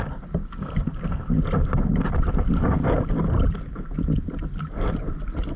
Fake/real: real